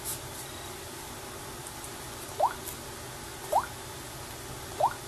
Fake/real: real